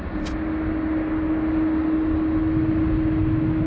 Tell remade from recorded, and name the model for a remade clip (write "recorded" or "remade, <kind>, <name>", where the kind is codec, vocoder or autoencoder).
recorded